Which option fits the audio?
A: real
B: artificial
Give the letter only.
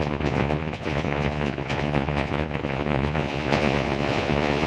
B